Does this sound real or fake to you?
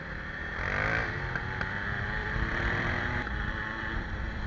fake